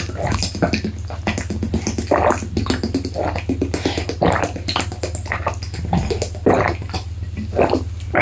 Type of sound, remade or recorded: recorded